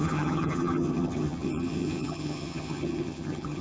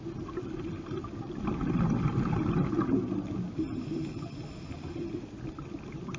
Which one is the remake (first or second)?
first